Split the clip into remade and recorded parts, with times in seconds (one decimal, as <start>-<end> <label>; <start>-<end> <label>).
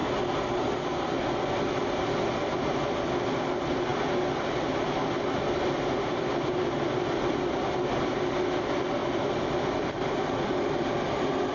0.0-9.0 recorded; 9.0-10.1 remade; 10.1-11.5 recorded